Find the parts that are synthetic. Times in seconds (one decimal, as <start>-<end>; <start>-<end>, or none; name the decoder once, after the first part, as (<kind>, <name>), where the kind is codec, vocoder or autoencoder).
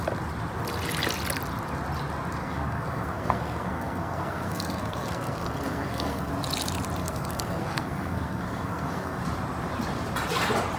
2.4-6.3 (codec, SNAC); 7.0-9.2